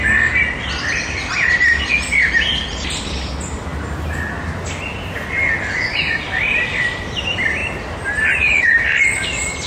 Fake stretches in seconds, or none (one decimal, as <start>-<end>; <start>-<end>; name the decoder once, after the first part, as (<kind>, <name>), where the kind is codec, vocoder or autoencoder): 0.0-3.7 (vocoder, BigVGAN v2); 5.7-7.6; 8.6-9.7